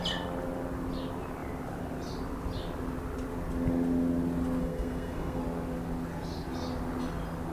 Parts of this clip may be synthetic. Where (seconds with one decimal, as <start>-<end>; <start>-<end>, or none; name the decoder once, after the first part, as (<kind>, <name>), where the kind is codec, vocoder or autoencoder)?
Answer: 4.6-5.4 (codec, SNAC)